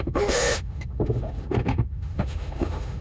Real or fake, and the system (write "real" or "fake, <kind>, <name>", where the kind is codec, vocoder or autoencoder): fake, autoencoder, DAC-VAE